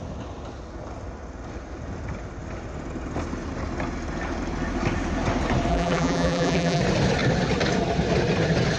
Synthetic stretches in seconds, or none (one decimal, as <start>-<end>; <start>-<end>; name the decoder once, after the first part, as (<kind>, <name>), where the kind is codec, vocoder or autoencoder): 5.7-6.8 (vocoder, BigVGAN v2)